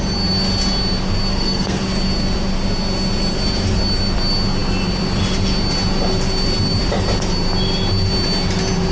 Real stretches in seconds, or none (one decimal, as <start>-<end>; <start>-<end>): 0.0-1.3; 1.8-8.9